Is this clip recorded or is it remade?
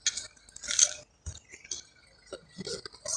recorded